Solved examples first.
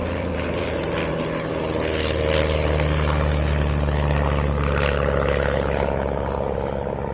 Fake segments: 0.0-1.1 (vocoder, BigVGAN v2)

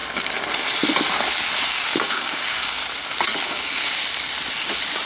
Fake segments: 1.7-2.8 (codec, DAC); 3.5-4.0

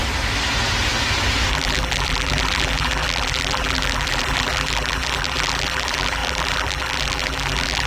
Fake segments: 1.5-7.9 (vocoder, BigVGAN v2)

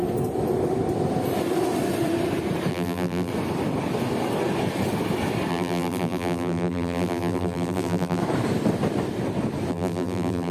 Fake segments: 2.7-3.3 (vocoder, BigVGAN v2); 5.5-8.2; 9.7-10.5

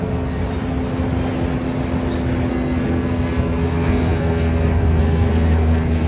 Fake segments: 0.0-0.4 (codec, SNAC); 2.5-6.1